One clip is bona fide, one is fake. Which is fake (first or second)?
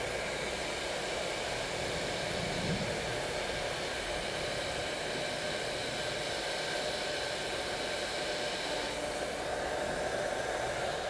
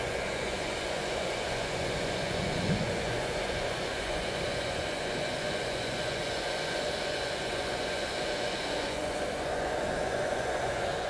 second